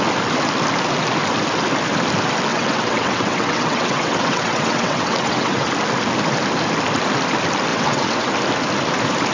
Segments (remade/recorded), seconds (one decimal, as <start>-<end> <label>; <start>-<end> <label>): 0.0-2.5 recorded; 2.5-5.7 remade; 5.7-7.7 recorded; 7.7-8.3 remade; 8.3-9.3 recorded